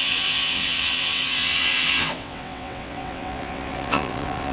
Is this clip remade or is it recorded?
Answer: remade